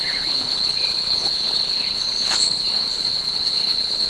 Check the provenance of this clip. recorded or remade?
remade